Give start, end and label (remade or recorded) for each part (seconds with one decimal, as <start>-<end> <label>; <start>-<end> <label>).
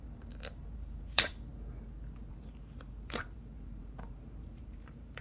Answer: 0.0-1.5 remade; 1.5-2.3 recorded; 2.3-5.2 remade